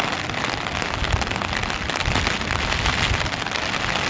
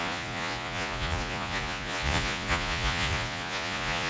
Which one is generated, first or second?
second